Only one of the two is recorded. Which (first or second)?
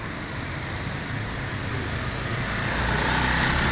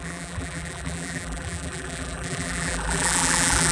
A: first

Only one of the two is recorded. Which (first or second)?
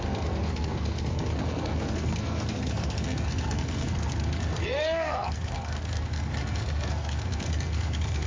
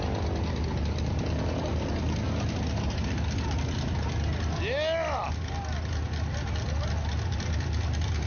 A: second